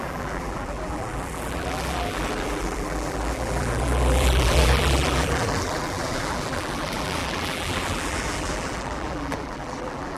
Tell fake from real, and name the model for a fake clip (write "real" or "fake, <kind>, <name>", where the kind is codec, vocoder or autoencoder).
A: fake, vocoder, BigVGAN v2